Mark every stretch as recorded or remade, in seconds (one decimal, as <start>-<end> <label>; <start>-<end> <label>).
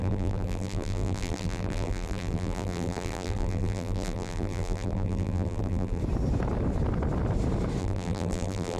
0.0-6.0 remade; 6.0-7.8 recorded; 7.8-8.8 remade